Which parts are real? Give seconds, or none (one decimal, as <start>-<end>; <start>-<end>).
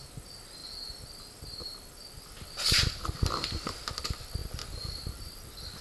0.0-4.4